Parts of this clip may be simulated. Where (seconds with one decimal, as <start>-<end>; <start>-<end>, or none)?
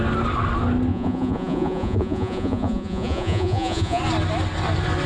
0.9-4.0